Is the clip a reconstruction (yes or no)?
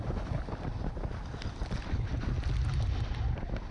no